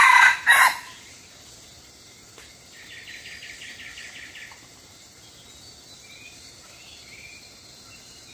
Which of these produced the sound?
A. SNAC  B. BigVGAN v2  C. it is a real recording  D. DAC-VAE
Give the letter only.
C